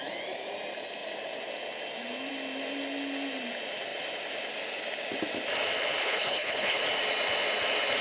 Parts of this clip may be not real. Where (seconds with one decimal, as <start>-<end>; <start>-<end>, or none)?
6.0-6.8